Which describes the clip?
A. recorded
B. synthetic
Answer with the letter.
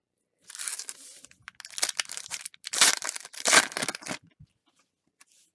A